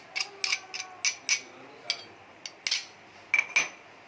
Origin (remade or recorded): recorded